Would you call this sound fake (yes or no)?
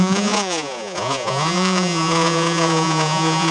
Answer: yes